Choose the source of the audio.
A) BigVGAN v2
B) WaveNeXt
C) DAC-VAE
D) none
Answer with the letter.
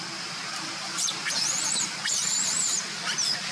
A